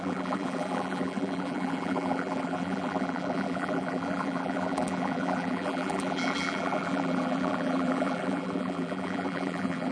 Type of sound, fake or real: fake